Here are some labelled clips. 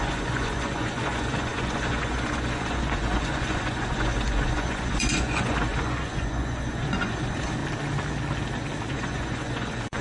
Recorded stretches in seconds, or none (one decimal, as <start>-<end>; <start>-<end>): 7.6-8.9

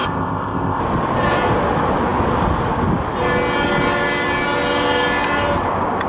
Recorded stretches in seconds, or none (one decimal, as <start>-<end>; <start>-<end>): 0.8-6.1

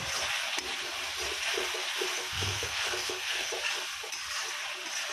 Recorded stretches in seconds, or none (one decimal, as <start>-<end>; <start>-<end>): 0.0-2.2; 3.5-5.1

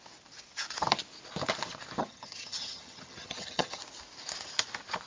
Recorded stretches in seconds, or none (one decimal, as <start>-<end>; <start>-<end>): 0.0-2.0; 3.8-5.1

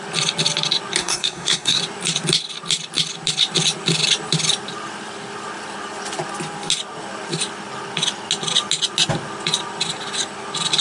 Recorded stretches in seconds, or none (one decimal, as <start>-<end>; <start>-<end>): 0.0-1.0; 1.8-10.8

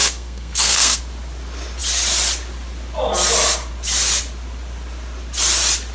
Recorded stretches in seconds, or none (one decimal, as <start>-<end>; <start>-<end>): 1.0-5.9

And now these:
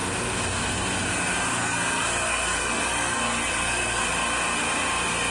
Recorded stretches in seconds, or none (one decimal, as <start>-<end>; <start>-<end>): 0.0-1.6; 4.1-5.3

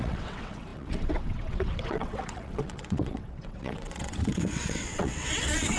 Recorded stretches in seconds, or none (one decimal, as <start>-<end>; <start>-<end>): none